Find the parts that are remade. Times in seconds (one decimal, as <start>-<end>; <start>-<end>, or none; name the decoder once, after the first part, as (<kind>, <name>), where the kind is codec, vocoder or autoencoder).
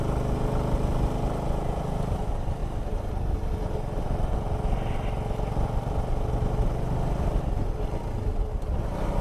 none